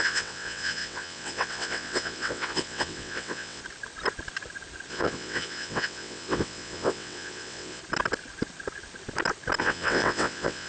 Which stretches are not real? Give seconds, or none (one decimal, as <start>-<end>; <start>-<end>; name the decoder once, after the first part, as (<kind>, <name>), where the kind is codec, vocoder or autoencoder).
0.0-3.6 (vocoder, WaveNeXt); 4.9-7.8; 9.6-10.7